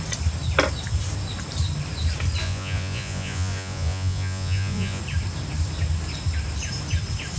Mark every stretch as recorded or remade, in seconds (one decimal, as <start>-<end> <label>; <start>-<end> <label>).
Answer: 0.0-2.4 recorded; 2.4-5.0 remade; 5.0-7.4 recorded